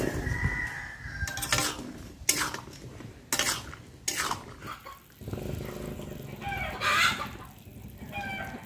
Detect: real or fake real